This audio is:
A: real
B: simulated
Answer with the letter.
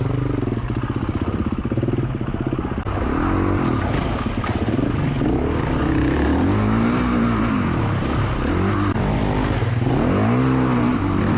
A